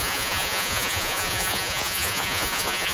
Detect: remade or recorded remade